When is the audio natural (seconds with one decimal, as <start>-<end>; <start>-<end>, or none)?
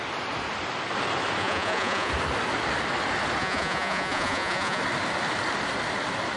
0.0-1.4; 2.1-3.4; 4.8-6.4